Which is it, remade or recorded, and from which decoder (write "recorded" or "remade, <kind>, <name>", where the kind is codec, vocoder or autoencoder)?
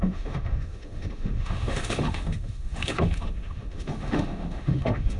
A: remade, autoencoder, DAC-VAE